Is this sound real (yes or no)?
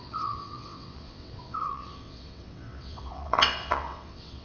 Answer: no